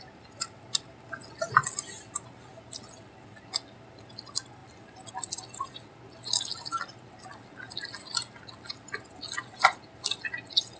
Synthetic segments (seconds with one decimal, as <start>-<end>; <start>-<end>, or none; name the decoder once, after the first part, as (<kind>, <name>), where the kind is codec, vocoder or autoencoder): none